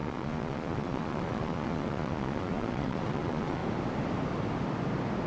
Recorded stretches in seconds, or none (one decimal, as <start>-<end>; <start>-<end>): 3.6-5.3